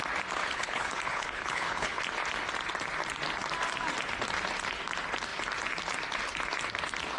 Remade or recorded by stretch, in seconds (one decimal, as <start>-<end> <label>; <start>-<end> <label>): 0.0-0.4 recorded; 0.4-2.0 remade; 2.0-7.2 recorded